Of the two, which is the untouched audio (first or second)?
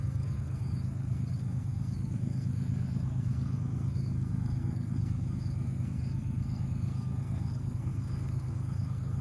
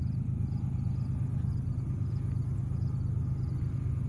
second